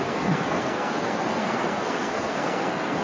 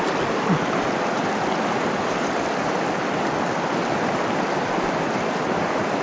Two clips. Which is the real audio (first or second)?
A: second